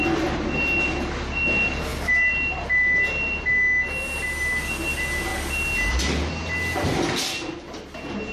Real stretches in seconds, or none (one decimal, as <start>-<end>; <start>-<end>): 0.0-8.3